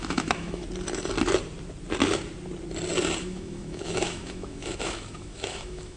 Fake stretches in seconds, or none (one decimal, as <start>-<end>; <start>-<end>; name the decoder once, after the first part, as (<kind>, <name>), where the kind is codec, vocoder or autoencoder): 0.0-0.6 (autoencoder, DAC-VAE); 3.2-6.0